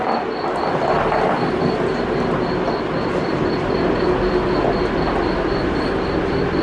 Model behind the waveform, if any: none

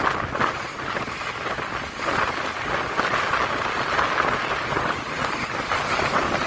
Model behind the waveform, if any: none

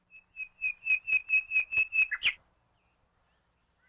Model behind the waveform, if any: none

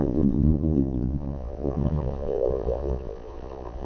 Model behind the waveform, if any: vocoder, Vocos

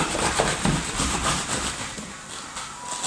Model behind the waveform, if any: none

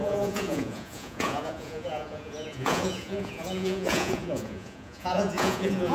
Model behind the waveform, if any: vocoder, Vocos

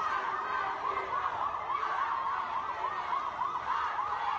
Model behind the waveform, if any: none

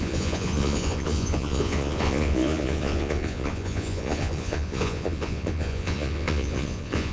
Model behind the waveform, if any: vocoder, Vocos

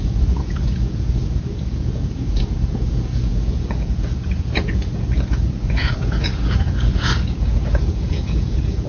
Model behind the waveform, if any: vocoder, Vocos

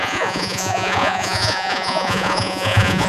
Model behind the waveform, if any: vocoder, Vocos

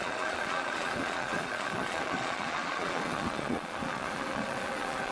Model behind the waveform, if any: vocoder, Vocos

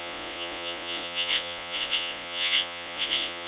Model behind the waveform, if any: vocoder, Vocos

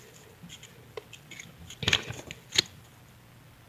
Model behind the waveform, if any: none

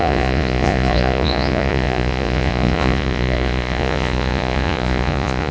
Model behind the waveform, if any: vocoder, Vocos